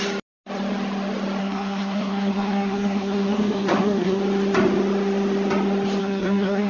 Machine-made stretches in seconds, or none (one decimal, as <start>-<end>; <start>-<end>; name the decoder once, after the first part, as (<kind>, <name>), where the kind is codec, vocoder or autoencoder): 1.4-4.2 (codec, SNAC); 6.0-6.7